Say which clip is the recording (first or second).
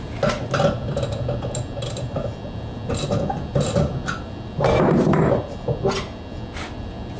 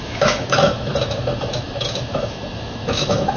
first